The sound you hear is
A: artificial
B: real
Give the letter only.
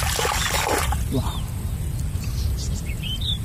B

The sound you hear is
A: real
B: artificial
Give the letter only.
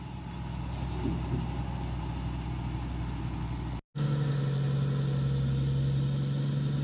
A